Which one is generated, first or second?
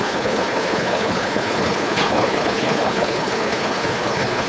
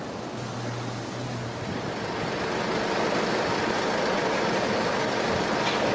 first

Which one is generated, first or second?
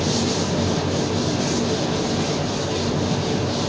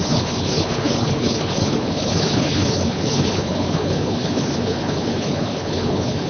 second